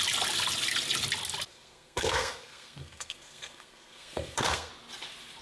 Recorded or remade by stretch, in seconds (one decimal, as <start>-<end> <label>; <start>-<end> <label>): 0.0-1.5 recorded; 1.5-4.7 remade; 4.7-5.4 recorded